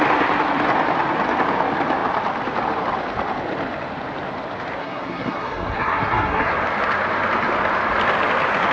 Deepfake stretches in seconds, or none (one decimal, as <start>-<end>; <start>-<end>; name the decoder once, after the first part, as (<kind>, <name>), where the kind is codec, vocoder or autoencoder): 4.8-6.5 (codec, SNAC)